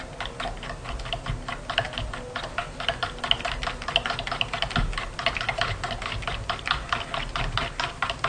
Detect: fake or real real